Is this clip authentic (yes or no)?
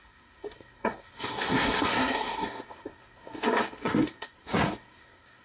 no